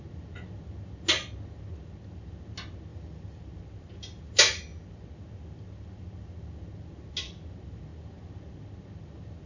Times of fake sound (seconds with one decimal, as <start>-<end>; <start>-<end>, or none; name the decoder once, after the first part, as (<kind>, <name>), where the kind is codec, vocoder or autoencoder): 2.9-3.4 (vocoder, BigVGAN v2)